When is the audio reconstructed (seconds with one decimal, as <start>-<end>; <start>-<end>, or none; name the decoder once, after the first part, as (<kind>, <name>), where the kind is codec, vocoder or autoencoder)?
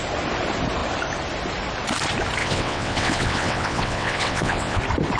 2.4-4.8 (vocoder, WaveNeXt)